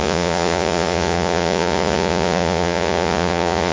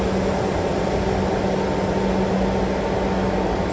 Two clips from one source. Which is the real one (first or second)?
second